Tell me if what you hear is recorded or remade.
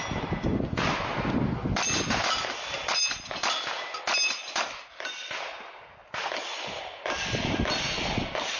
recorded